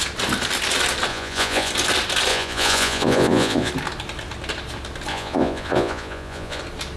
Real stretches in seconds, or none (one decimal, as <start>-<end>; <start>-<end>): 0.0-1.1; 1.7-2.3; 3.7-5.1; 6.6-7.0